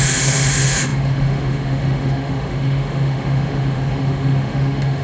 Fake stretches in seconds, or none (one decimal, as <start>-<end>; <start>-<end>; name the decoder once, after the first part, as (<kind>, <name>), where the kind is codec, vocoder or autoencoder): 0.0-5.0 (autoencoder, DAC-VAE)